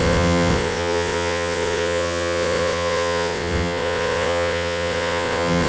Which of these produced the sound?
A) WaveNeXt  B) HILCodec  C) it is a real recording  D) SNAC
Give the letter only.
A